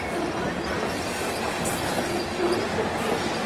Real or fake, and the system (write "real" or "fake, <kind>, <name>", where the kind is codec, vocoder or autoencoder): fake, vocoder, BigVGAN v2